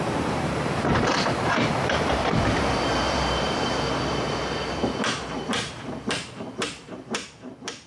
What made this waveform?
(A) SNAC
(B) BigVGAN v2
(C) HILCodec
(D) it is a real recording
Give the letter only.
B